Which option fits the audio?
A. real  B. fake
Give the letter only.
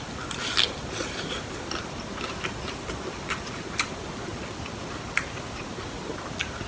A